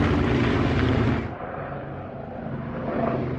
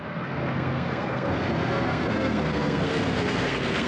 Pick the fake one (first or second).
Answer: second